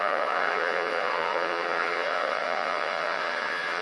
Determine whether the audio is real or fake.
fake